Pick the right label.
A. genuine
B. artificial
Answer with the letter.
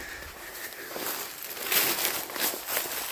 B